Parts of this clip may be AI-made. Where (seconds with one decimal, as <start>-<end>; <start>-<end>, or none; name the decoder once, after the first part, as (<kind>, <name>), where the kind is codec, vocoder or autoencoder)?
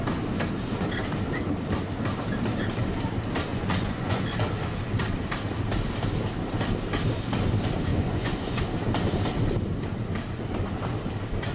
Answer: 3.5-4.2 (vocoder, Vocos); 7.9-8.6